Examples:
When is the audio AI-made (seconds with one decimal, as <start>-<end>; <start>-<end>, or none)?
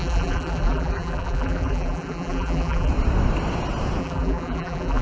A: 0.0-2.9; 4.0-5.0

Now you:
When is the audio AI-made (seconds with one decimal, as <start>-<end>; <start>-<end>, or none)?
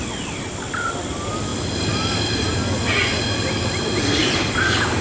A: none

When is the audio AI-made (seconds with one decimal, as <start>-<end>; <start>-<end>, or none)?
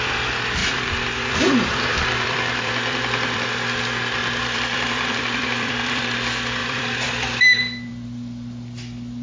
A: 0.6-3.8; 4.2-6.0; 6.6-7.9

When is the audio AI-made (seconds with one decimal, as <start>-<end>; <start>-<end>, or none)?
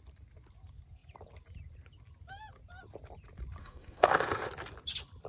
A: 3.6-4.5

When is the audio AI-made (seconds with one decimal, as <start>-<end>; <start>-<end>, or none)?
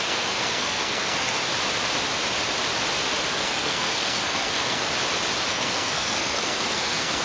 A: 0.0-1.4; 3.3-4.9; 5.5-7.2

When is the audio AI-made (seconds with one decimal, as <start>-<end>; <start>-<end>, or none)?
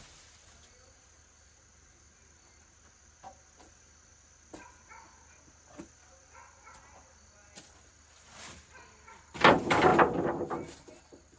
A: none